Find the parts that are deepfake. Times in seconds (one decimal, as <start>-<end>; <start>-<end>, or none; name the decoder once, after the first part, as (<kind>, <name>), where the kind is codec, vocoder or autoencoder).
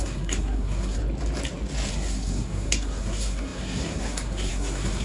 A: 0.0-1.0 (codec, SNAC); 1.9-5.0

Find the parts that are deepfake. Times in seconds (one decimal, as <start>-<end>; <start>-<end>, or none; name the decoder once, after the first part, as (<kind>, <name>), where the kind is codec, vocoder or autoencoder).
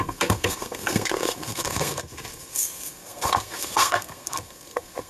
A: 0.0-5.1 (codec, SNAC)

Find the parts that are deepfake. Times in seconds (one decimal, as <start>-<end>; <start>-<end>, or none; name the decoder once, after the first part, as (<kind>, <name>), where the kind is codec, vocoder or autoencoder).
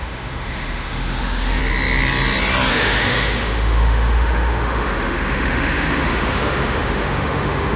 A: 0.0-1.6 (autoencoder, DAC-VAE); 2.7-7.8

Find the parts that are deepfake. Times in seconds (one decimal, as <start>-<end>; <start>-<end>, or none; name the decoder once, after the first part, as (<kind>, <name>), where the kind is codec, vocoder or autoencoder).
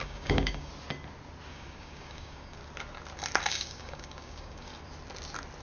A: 0.0-0.7 (codec, DAC); 1.5-2.6; 3.5-4.7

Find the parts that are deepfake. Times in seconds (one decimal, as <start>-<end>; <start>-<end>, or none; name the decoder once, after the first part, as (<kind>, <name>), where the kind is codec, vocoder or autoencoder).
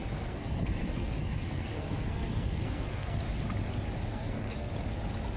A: 0.0-3.2 (codec, SNAC); 4.1-4.7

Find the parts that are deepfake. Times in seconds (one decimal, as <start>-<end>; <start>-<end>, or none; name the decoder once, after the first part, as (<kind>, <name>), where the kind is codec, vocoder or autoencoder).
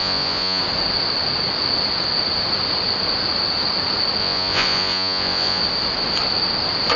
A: 0.0-0.6 (vocoder, Vocos); 4.2-5.6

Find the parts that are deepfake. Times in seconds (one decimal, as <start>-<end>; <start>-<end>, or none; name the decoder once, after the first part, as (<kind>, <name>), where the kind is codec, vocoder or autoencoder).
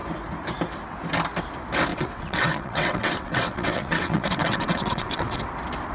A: 1.9-5.4 (vocoder, WaveNeXt)